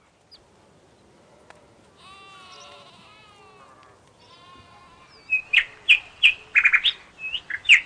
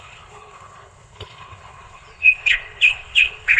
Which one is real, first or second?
first